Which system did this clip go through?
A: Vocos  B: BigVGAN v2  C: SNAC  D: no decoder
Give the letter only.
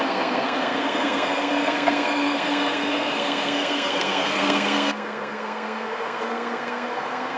C